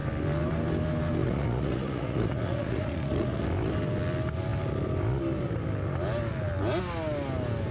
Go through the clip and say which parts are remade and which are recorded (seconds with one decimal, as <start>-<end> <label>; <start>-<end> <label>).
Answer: 0.0-1.2 recorded; 1.2-3.4 remade; 3.4-7.7 recorded